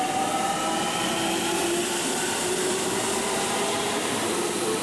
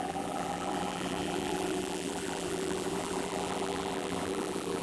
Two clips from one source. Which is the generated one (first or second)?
second